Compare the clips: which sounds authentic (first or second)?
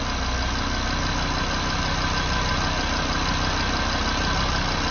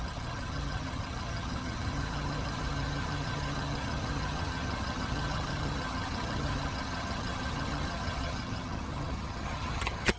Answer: first